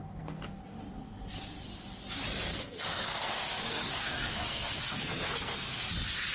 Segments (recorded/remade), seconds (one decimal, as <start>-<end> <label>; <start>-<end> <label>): 0.0-0.6 remade; 0.6-2.5 recorded; 2.5-5.8 remade; 5.8-6.3 recorded